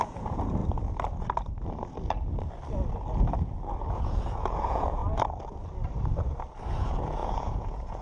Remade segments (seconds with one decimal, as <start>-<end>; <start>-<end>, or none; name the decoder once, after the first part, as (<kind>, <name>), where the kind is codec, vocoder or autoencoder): 0.0-0.6 (vocoder, Vocos); 3.9-5.0; 6.8-8.0